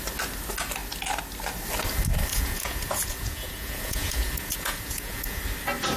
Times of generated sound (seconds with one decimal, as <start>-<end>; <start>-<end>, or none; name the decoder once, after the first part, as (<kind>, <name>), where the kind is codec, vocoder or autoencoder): 2.3-5.4 (vocoder, Vocos)